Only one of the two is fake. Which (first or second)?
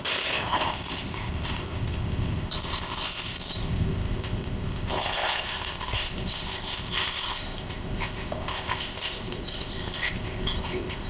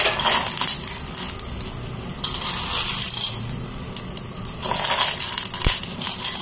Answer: first